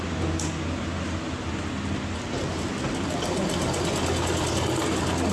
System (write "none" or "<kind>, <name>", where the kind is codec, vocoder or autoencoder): none